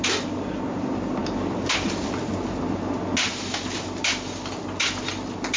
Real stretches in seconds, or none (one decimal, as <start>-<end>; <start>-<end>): 0.0-5.6